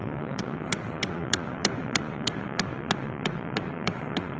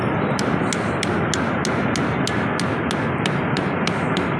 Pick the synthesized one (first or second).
first